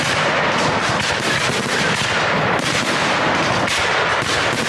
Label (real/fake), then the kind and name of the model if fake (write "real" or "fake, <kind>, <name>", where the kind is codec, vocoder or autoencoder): real